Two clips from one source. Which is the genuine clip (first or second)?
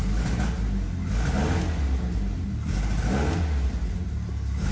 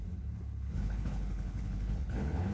first